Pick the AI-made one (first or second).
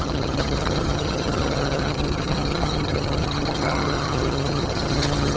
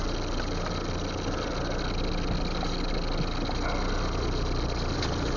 first